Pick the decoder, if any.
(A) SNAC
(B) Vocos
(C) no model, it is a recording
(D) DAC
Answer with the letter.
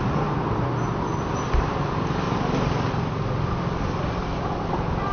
C